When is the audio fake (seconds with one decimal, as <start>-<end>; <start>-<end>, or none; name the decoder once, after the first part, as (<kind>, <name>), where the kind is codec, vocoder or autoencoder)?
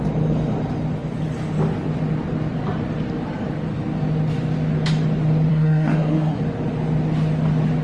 5.5-6.4 (codec, SNAC)